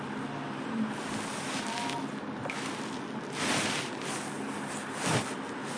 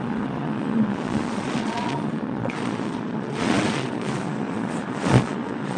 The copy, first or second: second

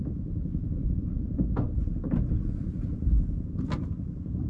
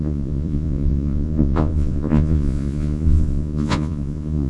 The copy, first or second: second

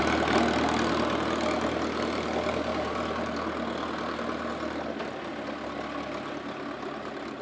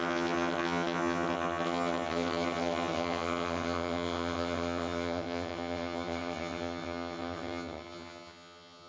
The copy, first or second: second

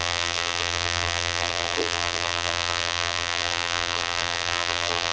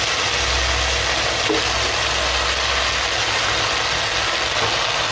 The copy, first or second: first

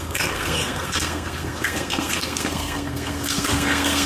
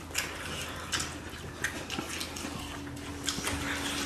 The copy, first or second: first